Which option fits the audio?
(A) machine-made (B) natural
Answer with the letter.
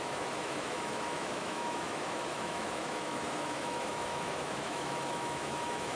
A